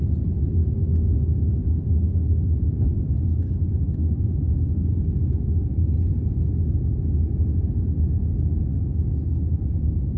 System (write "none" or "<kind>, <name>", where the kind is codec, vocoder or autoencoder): none